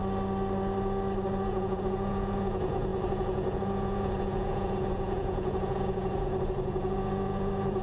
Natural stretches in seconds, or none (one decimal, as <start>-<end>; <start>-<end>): 0.0-1.3